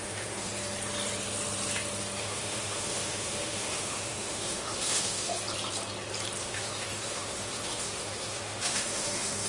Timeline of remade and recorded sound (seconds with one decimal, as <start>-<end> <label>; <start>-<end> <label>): 0.0-0.5 remade; 0.5-2.2 recorded; 2.2-5.3 remade; 5.3-6.4 recorded; 6.4-9.5 remade